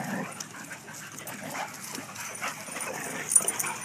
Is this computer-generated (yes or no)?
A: no